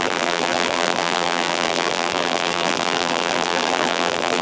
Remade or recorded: remade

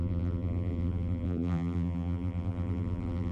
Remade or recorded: remade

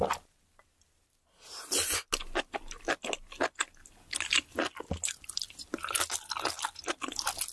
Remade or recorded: recorded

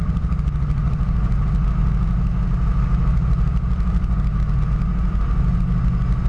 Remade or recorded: recorded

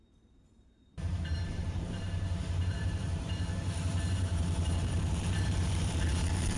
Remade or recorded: remade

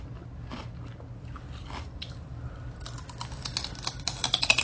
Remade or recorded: recorded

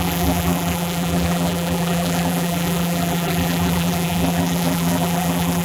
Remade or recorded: remade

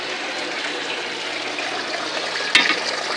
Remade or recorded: recorded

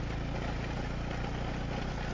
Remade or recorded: recorded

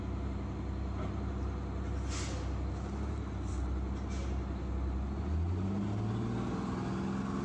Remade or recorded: recorded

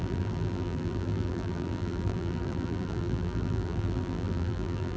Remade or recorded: remade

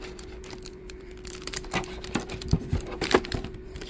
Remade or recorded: remade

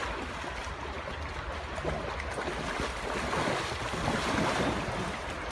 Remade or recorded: recorded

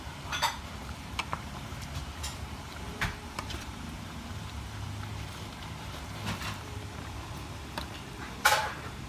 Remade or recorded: remade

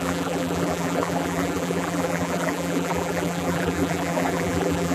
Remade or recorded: remade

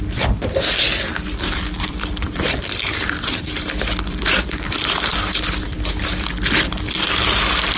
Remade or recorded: remade